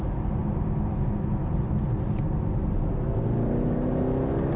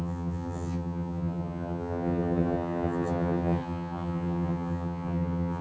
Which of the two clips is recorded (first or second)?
first